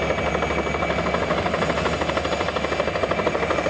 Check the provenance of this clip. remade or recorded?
recorded